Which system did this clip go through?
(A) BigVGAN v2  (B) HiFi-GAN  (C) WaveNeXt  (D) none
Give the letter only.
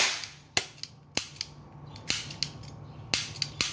D